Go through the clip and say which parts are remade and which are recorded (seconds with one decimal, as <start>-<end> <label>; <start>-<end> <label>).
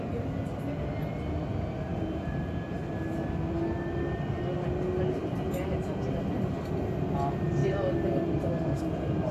0.0-1.9 recorded; 1.9-2.5 remade; 2.5-5.2 recorded; 5.2-5.7 remade; 5.7-7.6 recorded; 7.6-8.8 remade; 8.8-9.3 recorded